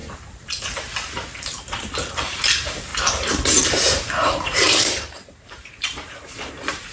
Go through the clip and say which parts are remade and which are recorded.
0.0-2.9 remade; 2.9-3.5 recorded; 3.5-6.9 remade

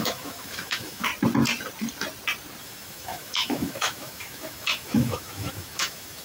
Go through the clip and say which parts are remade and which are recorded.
0.0-1.1 remade; 1.1-2.6 recorded; 2.6-6.2 remade

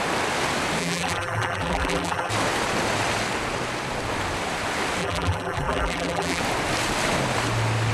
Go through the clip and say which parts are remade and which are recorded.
0.0-0.8 recorded; 0.8-2.3 remade; 2.3-5.0 recorded; 5.0-6.4 remade; 6.4-7.9 recorded

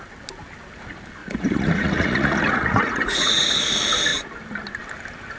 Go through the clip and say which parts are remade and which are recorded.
0.0-1.2 recorded; 1.2-3.6 remade; 3.6-5.4 recorded